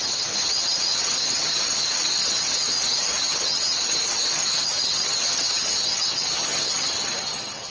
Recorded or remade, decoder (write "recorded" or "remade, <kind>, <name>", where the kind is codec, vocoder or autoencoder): remade, vocoder, HiFi-GAN